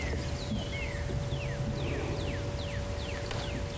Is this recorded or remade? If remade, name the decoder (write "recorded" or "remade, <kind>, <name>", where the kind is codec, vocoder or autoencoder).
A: recorded